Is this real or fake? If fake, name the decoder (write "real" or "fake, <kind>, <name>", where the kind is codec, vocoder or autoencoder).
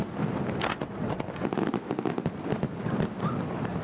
real